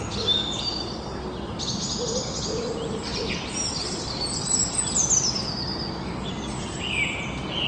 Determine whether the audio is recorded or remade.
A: recorded